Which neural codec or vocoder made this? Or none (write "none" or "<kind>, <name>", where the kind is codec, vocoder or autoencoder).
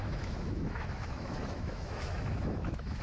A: autoencoder, DAC-VAE